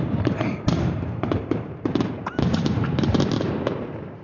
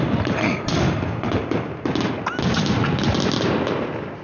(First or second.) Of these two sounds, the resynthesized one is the first